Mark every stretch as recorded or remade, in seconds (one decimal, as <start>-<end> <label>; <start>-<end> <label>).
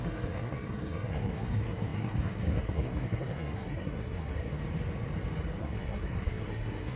0.0-4.6 remade; 4.6-5.6 recorded; 5.6-7.0 remade